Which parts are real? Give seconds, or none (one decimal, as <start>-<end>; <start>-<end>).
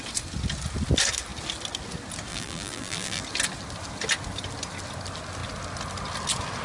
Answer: 0.0-2.3; 3.2-6.6